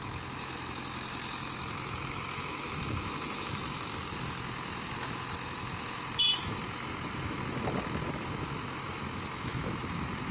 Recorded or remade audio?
remade